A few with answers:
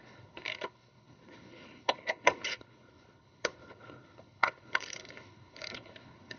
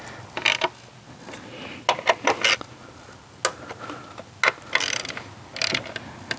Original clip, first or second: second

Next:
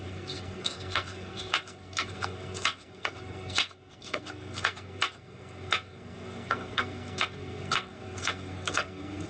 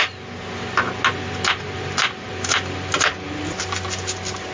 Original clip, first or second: second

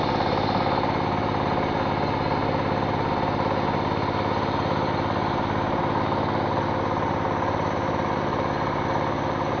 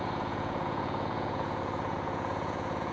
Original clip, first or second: first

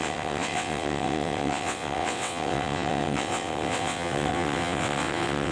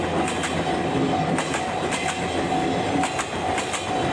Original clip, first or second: second